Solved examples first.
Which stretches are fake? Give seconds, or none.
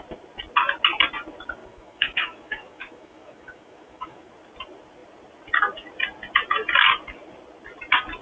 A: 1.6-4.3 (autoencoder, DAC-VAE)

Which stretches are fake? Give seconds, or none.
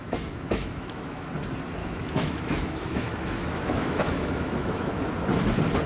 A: 0.0-1.3 (autoencoder, DAC-VAE); 1.8-5.0